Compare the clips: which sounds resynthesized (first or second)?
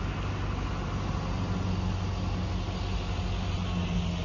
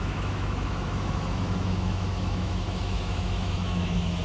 second